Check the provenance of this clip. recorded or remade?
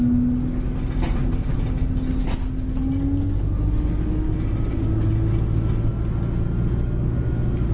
recorded